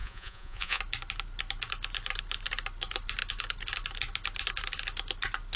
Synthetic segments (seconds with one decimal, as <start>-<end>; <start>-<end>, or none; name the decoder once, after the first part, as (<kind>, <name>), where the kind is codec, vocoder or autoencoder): 0.0-0.8 (vocoder, Vocos)